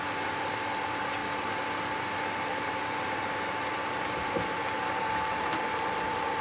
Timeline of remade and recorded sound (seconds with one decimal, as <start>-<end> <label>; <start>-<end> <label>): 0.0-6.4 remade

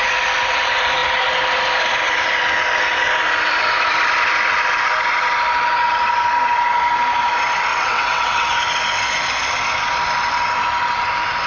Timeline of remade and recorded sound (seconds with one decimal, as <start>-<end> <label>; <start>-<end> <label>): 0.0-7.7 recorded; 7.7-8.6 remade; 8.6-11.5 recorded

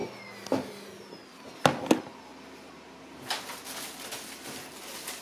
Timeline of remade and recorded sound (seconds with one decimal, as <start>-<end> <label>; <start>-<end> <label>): 0.0-5.2 recorded

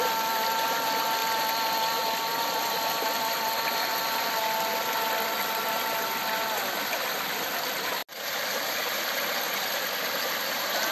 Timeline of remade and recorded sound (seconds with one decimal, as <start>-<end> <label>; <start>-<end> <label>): 0.0-1.2 remade; 1.2-3.3 recorded; 3.3-4.7 remade; 4.7-6.2 recorded; 6.2-8.0 remade; 8.0-9.6 recorded; 9.6-10.9 remade

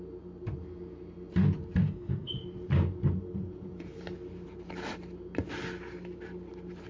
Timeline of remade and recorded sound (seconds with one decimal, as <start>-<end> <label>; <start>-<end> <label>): 0.0-1.8 recorded; 1.8-2.3 remade; 2.3-6.9 recorded

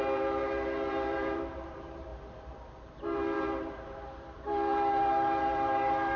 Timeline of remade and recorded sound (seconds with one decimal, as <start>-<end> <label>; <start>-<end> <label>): 0.0-2.1 remade; 2.1-2.8 recorded; 2.8-6.2 remade